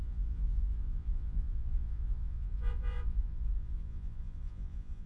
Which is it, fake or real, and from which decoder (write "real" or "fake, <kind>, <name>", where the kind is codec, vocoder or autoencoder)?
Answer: fake, vocoder, Vocos